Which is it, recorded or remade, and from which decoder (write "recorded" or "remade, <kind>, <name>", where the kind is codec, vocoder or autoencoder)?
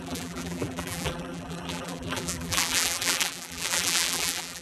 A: remade, vocoder, BigVGAN v2